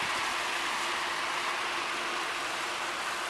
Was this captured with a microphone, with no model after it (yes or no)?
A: yes